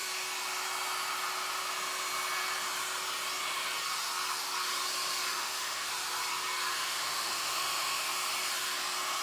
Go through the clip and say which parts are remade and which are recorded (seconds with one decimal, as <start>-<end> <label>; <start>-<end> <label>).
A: 0.0-5.3 recorded; 5.3-5.9 remade; 5.9-6.7 recorded; 6.7-8.1 remade; 8.1-9.2 recorded